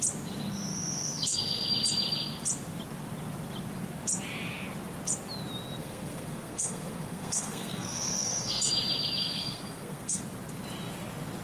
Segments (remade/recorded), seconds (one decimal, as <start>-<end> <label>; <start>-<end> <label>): 0.0-0.7 recorded; 0.7-1.7 remade; 1.7-5.8 recorded; 5.8-8.7 remade; 8.7-9.2 recorded; 9.2-10.2 remade; 10.2-11.4 recorded